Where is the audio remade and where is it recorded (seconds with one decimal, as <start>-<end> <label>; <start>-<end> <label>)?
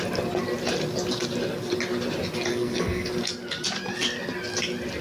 0.0-2.5 recorded; 2.5-3.1 remade; 3.1-5.0 recorded